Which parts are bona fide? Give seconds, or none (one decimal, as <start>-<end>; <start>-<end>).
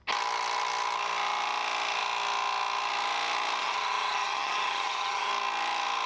0.0-3.6; 5.3-6.1